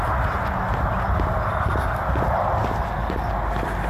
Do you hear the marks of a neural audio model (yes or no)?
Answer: no